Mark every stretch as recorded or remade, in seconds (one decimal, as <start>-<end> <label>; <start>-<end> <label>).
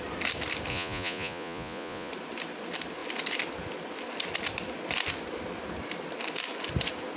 0.0-0.7 recorded; 0.7-2.1 remade; 2.1-7.2 recorded